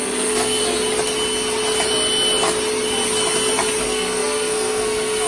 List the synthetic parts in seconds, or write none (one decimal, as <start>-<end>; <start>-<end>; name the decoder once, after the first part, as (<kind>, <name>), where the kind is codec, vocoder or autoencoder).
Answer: 0.0-0.6 (codec, SNAC); 3.8-5.3